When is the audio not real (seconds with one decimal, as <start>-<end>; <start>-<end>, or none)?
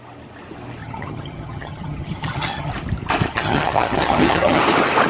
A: 0.8-2.7; 3.3-4.6